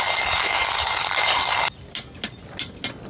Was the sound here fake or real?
real